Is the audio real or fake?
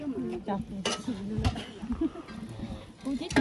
real